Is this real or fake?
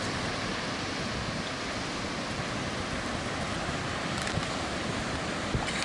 real